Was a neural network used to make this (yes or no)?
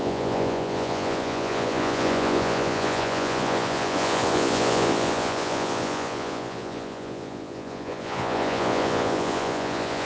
yes